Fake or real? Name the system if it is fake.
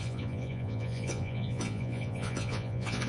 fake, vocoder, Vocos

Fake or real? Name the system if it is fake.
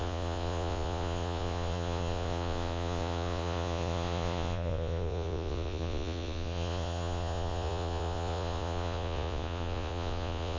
fake, vocoder, Vocos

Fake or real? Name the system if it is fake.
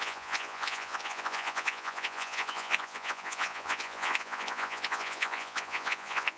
fake, vocoder, Vocos